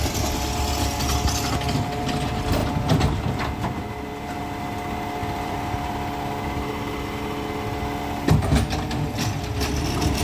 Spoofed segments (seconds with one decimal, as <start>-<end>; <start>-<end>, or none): 5.2-5.9